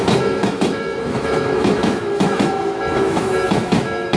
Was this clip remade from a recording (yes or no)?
yes